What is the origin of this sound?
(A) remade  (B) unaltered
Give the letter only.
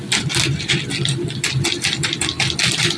B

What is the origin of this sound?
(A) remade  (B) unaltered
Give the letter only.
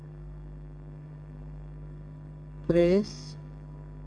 A